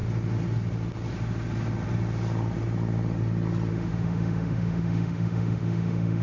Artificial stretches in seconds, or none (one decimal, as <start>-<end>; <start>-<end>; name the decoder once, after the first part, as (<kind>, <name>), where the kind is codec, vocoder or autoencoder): 3.7-6.2 (autoencoder, DAC-VAE)